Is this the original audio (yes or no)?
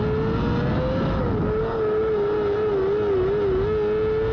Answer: yes